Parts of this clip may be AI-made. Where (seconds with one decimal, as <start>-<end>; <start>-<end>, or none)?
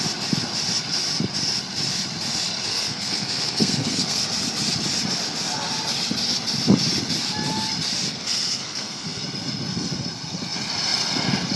2.7-4.2; 8.1-9.2